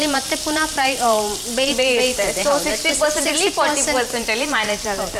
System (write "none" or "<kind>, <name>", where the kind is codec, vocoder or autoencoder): vocoder, BigVGAN v2